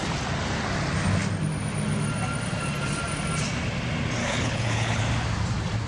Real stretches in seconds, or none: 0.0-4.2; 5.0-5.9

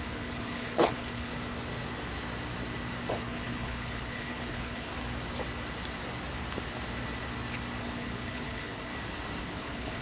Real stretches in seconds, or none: 1.3-3.1; 4.9-7.8; 8.9-9.4

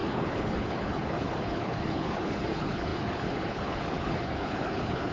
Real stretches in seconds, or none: none

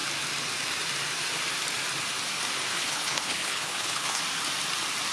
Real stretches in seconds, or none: 0.0-2.7; 4.2-5.1